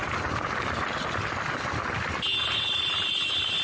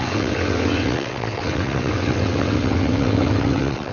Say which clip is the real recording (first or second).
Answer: first